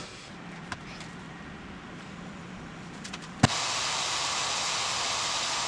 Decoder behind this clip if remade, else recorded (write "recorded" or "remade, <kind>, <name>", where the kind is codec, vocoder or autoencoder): recorded